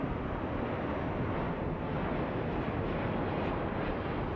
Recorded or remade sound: recorded